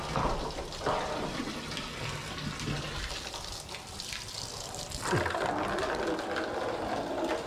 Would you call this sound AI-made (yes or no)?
no